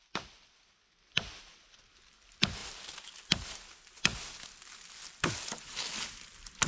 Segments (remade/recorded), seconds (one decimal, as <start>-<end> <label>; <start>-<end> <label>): 0.0-6.7 recorded